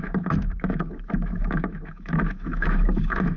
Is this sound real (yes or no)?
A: no